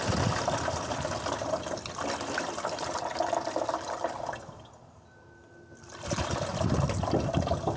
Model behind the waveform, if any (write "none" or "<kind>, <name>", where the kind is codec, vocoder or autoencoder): none